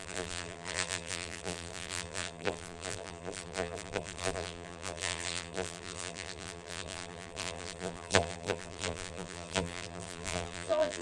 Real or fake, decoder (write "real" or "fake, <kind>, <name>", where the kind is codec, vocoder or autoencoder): fake, vocoder, BigVGAN v2